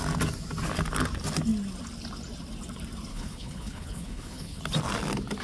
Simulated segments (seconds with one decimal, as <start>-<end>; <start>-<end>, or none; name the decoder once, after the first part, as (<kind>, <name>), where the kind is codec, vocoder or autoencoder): 3.1-4.6 (codec, HILCodec)